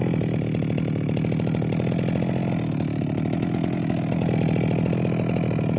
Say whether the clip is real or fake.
real